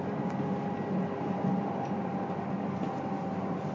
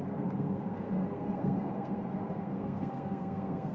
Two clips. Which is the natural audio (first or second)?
first